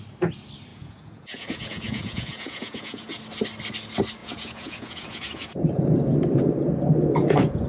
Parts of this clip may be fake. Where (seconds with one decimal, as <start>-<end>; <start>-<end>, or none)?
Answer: 0.7-3.2; 4.2-6.0; 7.2-7.7